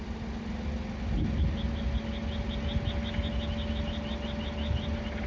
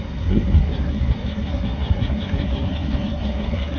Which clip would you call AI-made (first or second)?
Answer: second